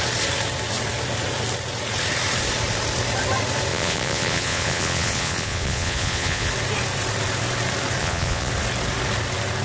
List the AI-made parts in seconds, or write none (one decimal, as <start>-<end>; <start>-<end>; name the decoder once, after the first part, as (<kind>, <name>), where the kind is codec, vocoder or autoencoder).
3.7-6.5 (vocoder, Vocos); 8.0-8.5